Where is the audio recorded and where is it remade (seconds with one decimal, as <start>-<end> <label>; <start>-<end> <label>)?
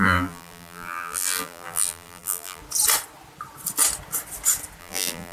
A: 0.0-2.6 remade; 2.6-4.8 recorded; 4.8-5.3 remade